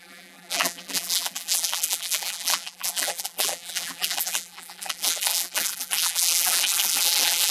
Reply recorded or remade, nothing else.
remade